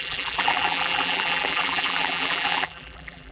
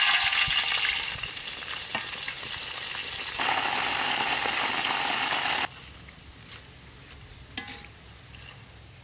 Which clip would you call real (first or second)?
second